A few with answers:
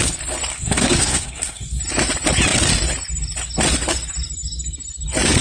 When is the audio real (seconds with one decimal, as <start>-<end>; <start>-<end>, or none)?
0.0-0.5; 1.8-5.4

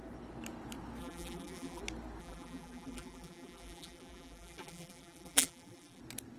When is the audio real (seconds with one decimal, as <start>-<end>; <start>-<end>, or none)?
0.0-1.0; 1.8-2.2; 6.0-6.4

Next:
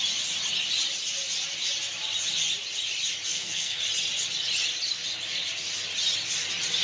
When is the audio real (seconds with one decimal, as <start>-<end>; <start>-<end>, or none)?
0.0-3.3; 3.8-6.8

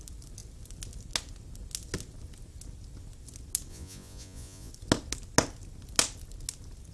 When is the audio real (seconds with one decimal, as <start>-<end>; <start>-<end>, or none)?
0.0-3.7; 4.7-6.9

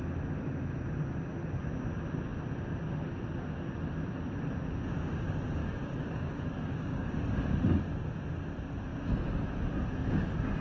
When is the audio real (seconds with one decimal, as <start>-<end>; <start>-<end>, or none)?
0.0-5.6; 7.1-10.6